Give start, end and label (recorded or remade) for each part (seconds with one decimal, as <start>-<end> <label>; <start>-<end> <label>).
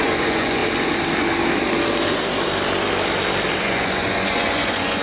0.0-0.6 remade; 0.6-3.6 recorded; 3.6-5.0 remade